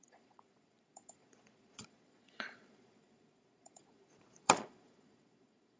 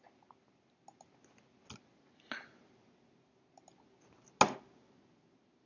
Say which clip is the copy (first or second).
first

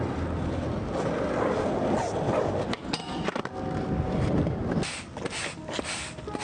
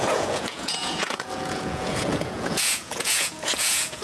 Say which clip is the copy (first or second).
second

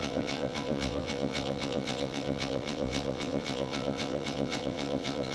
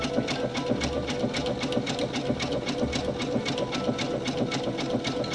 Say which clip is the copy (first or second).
first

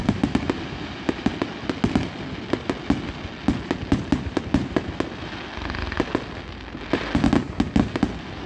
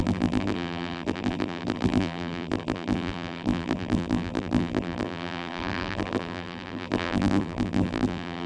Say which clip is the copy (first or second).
second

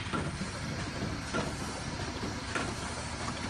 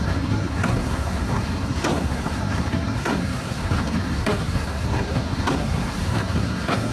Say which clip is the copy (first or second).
second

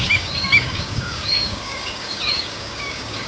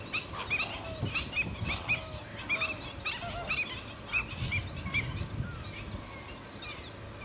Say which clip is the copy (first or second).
first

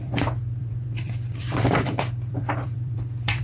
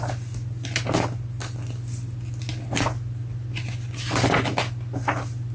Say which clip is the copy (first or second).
first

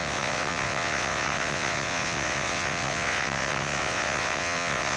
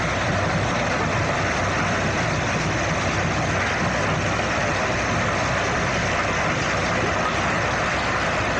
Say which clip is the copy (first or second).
first